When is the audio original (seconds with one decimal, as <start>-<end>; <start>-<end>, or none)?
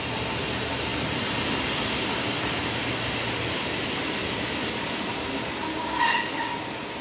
0.0-5.7; 6.6-7.0